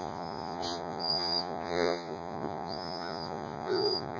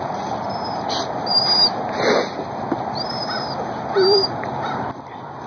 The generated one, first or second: first